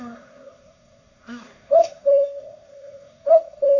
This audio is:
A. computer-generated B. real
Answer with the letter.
A